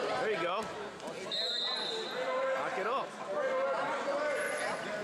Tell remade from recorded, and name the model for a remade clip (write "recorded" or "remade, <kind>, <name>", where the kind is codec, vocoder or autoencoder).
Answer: recorded